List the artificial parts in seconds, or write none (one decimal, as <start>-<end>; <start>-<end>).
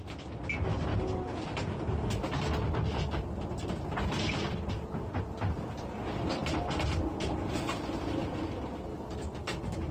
8.9-9.9